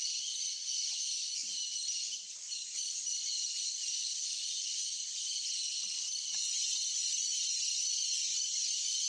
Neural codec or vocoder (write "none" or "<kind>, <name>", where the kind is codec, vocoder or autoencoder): none